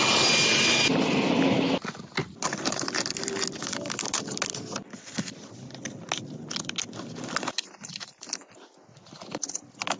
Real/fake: real